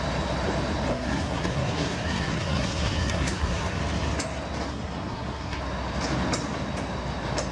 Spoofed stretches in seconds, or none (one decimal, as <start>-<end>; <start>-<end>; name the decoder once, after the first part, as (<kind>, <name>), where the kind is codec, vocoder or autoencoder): 0.9-3.8 (codec, SNAC); 4.7-5.6